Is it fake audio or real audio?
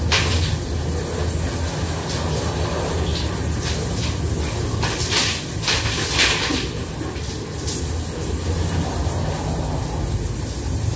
real